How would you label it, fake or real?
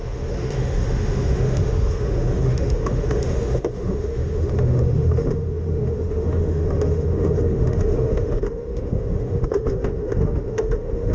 fake